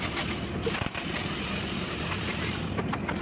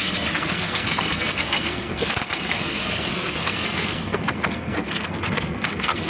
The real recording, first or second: first